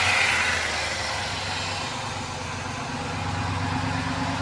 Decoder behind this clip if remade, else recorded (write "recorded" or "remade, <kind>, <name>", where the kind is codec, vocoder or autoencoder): recorded